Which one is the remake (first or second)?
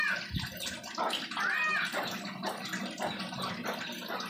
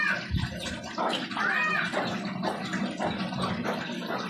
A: second